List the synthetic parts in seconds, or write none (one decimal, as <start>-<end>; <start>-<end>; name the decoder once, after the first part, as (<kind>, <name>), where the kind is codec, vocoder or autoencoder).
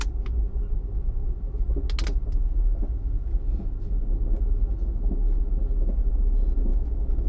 none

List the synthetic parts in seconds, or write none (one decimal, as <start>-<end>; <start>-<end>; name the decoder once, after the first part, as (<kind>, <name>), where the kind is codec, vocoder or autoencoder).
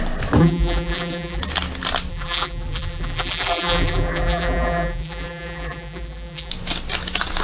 0.4-1.4 (vocoder, BigVGAN v2); 2.1-6.5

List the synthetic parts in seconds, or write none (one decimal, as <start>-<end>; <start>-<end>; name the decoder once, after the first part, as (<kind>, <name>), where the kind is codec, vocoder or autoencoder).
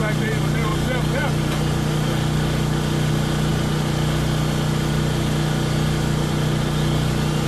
none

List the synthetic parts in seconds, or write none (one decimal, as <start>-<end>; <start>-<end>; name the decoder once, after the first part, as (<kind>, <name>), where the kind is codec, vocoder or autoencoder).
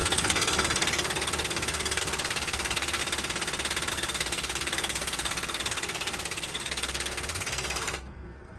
0.0-3.0 (codec, SNAC); 3.9-8.6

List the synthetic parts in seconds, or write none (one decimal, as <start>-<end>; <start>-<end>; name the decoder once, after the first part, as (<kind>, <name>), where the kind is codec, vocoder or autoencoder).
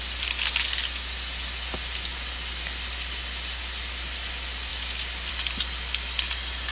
none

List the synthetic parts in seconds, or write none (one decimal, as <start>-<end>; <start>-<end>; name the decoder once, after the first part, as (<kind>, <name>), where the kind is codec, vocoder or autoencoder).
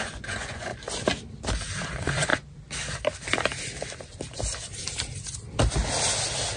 0.0-0.7 (vocoder, Vocos); 1.9-2.3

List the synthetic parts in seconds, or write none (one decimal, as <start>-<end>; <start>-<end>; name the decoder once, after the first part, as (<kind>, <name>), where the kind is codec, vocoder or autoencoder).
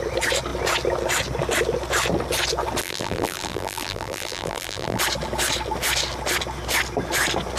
2.8-5.0 (vocoder, BigVGAN v2)